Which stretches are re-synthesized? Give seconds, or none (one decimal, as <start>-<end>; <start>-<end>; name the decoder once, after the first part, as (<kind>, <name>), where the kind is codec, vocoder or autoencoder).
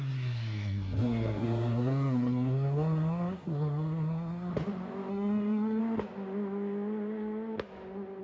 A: 0.0-4.5 (codec, SNAC); 5.1-5.8